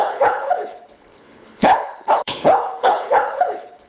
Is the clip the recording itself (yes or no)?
no